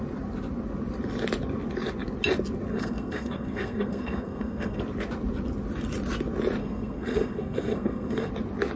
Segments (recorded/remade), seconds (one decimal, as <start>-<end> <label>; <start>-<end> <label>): 0.0-2.7 recorded; 2.7-4.8 remade; 4.8-6.6 recorded; 6.6-8.3 remade; 8.3-8.8 recorded